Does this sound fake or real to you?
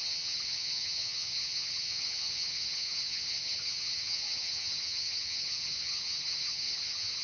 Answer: fake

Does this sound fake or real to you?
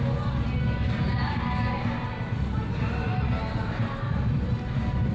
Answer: real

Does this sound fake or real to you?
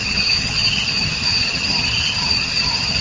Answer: fake